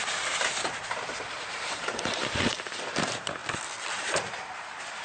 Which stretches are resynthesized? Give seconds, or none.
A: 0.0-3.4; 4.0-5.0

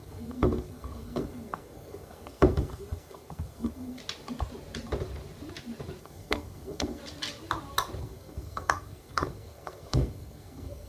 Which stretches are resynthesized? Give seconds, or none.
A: 0.0-4.0; 6.0-7.0; 8.0-10.9

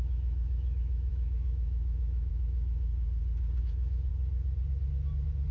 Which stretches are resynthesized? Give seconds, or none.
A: 0.0-2.9; 3.6-4.1